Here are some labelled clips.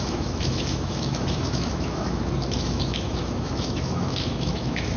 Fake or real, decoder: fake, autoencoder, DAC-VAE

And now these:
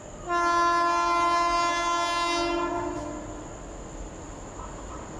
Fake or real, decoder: real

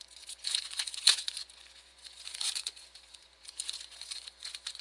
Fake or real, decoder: fake, vocoder, Vocos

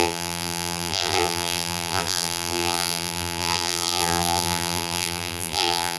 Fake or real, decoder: fake, vocoder, BigVGAN v2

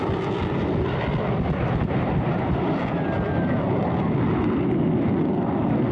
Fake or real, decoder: fake, vocoder, BigVGAN v2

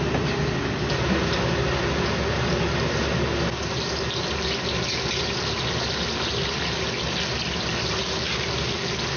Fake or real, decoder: real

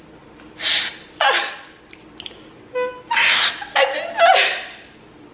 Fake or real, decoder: real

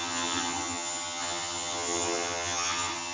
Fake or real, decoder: fake, vocoder, HiFi-GAN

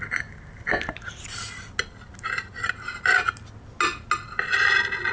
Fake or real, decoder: real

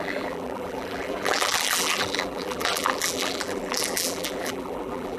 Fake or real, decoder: fake, vocoder, BigVGAN v2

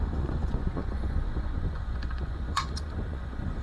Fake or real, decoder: fake, vocoder, Vocos